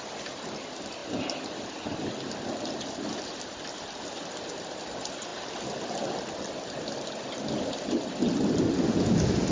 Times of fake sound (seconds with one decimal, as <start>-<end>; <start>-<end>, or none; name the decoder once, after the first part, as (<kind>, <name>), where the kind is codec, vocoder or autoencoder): none